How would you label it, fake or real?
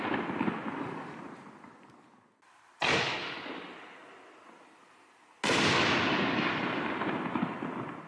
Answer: real